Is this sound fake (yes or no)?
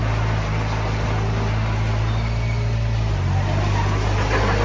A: no